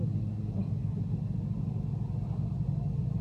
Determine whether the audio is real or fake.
real